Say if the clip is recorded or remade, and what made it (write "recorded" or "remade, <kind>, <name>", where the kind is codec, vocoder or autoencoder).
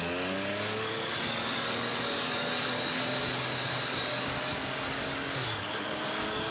remade, codec, DAC